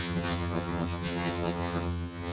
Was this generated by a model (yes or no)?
yes